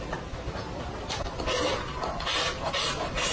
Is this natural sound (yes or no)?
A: yes